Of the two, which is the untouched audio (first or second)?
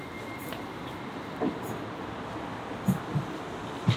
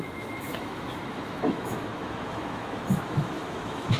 first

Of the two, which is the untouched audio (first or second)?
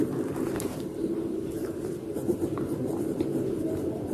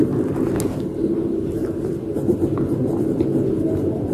second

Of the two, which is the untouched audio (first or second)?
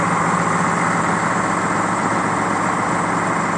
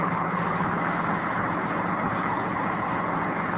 first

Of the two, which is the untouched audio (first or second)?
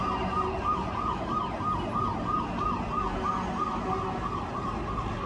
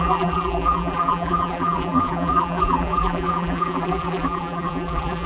first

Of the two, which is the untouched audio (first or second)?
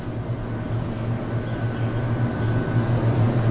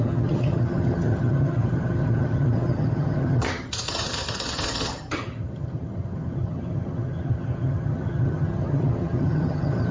first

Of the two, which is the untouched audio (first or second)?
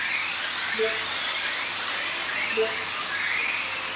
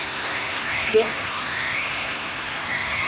first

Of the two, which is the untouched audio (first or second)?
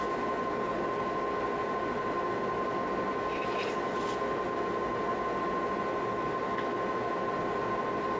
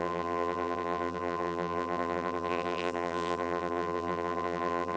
first